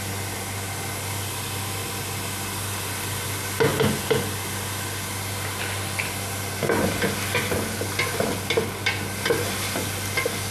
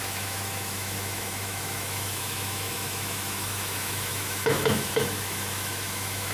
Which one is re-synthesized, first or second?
second